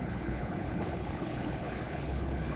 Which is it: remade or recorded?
remade